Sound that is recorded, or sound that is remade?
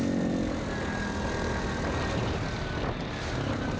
recorded